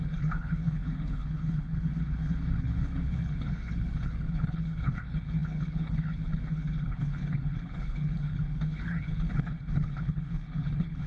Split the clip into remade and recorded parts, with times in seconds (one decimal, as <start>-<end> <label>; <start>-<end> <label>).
0.0-11.1 remade